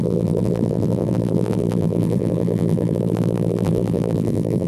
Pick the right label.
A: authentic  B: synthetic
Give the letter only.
B